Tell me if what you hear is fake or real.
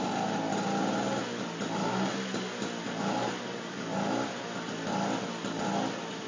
real